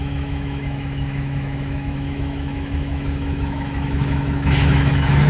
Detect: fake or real fake